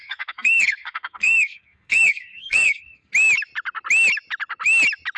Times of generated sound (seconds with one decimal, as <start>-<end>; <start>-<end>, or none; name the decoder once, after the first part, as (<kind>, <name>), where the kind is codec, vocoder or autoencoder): 0.0-3.1 (codec, SNAC)